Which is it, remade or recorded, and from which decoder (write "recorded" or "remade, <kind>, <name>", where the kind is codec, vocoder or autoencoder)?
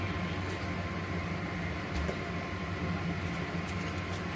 recorded